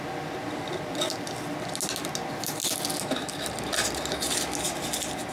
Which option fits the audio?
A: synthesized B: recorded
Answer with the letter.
B